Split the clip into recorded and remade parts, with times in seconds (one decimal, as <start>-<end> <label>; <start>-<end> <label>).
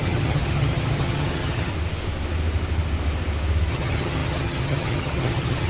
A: 0.0-1.7 remade; 1.7-3.7 recorded; 3.7-5.7 remade